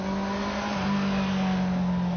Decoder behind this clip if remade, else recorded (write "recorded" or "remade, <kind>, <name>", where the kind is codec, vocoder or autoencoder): recorded